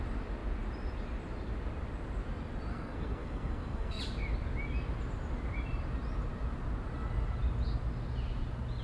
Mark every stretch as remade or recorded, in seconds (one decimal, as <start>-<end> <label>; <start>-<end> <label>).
0.0-2.7 recorded; 2.7-4.0 remade; 4.0-8.8 recorded